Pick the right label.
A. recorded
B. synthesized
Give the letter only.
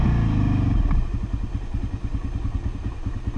A